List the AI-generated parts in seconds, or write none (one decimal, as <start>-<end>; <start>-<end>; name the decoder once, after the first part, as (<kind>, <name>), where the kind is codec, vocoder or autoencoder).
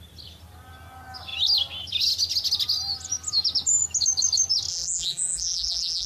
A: 4.7-6.1 (vocoder, BigVGAN v2)